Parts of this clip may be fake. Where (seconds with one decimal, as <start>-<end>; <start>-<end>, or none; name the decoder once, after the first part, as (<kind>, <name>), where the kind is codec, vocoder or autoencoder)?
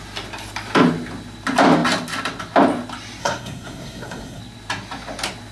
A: 3.2-4.4 (codec, SNAC)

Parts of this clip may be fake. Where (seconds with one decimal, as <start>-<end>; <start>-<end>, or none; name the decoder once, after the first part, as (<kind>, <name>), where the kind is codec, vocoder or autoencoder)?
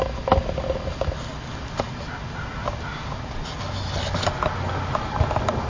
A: none